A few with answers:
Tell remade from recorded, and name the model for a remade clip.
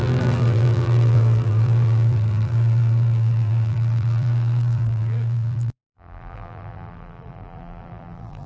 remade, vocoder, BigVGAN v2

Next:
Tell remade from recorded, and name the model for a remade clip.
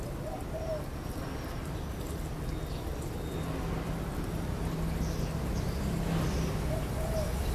recorded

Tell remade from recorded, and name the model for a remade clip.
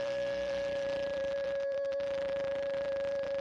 remade, vocoder, BigVGAN v2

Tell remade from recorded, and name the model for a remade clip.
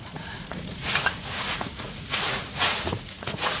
remade, vocoder, Vocos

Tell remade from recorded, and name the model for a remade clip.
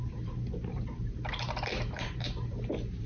remade, vocoder, BigVGAN v2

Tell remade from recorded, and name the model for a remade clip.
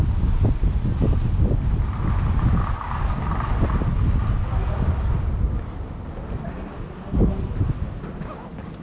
recorded